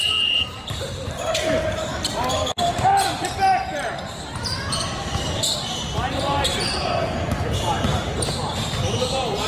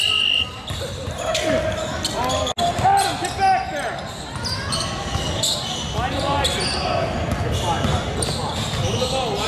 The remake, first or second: first